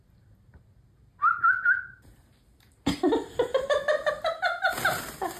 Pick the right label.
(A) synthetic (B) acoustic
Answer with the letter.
B